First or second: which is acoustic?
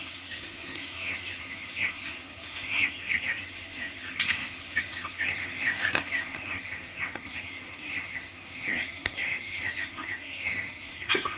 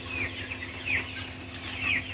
second